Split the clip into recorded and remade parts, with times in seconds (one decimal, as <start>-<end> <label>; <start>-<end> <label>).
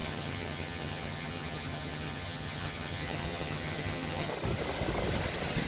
0.0-4.3 remade; 4.3-5.7 recorded